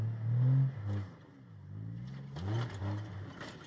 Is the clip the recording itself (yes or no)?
yes